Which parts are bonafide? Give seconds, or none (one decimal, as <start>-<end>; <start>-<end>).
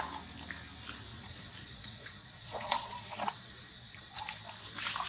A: 0.0-1.1; 4.2-5.1